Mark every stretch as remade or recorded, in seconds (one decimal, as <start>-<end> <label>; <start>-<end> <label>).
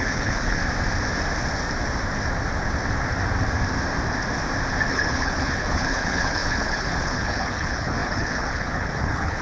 0.0-0.6 remade; 0.6-4.9 recorded; 4.9-9.4 remade